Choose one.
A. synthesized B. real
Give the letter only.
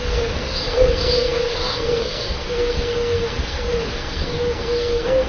A